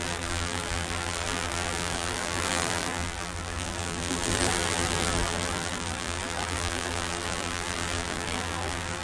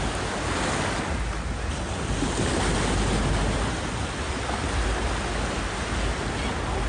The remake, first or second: first